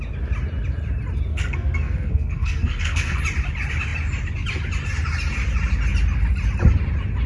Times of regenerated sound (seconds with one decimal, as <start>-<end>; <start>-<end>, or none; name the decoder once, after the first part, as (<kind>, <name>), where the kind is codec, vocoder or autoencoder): 1.3-3.2 (codec, SNAC)